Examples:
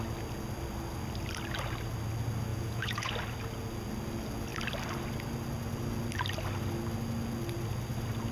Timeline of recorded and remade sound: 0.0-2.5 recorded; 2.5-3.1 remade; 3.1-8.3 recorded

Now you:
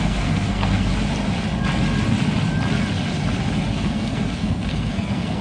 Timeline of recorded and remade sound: 0.0-0.9 remade; 0.9-3.7 recorded; 3.7-5.4 remade

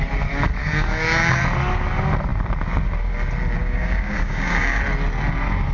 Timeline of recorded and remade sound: 0.0-0.6 recorded; 0.6-1.4 remade; 1.4-3.6 recorded; 3.6-4.8 remade; 4.8-5.7 recorded

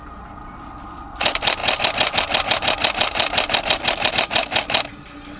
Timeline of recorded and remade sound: 0.0-5.4 recorded

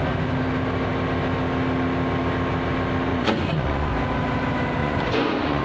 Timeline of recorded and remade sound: 0.0-3.1 recorded; 3.1-3.9 remade; 3.9-4.8 recorded; 4.8-5.6 remade

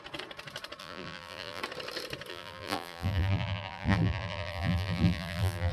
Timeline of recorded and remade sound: 0.0-0.8 recorded; 0.8-1.6 remade; 1.6-2.3 recorded; 2.3-5.7 remade